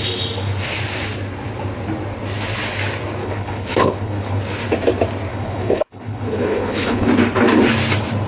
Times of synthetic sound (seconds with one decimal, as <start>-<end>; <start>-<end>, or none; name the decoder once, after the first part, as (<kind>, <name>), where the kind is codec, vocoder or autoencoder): 3.2-4.4 (codec, HILCodec); 5.3-7.1